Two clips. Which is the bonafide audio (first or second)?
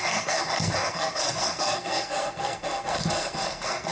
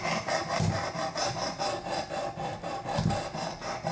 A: second